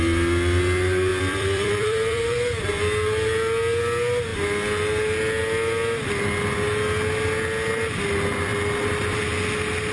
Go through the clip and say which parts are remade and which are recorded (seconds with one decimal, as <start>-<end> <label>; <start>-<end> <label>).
0.0-1.1 recorded; 1.1-2.8 remade; 2.8-9.9 recorded